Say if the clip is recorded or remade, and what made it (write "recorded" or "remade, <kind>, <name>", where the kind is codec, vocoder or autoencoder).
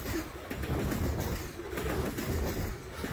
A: recorded